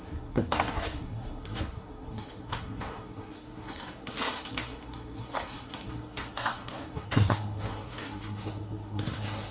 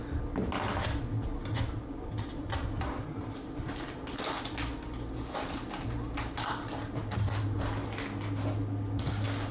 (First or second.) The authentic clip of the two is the second